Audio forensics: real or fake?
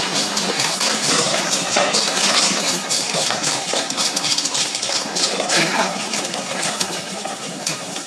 fake